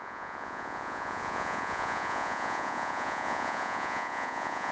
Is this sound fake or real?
fake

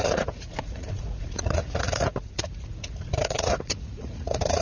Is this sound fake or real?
fake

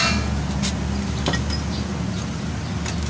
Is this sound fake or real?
real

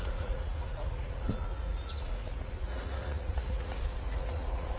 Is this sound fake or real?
fake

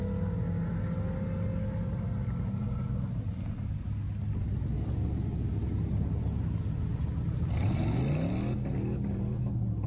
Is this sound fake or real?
real